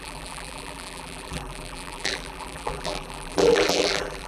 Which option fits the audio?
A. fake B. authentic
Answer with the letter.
A